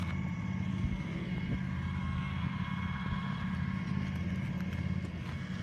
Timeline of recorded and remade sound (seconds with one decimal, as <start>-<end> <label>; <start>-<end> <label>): 0.0-0.7 recorded; 0.7-1.3 remade; 1.3-2.0 recorded; 2.0-2.5 remade; 2.5-5.6 recorded